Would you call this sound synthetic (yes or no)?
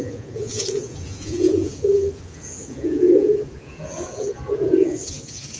yes